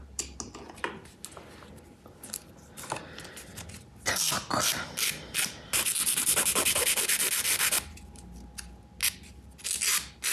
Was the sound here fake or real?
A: real